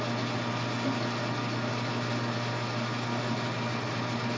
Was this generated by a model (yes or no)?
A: no